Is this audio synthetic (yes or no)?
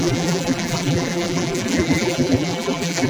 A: yes